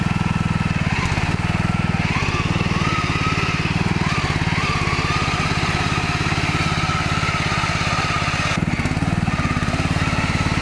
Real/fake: real